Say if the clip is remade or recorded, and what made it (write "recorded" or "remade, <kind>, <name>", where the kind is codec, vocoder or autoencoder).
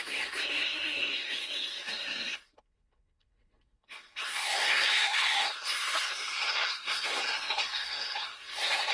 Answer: remade, codec, SNAC